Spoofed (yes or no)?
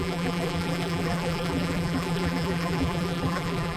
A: yes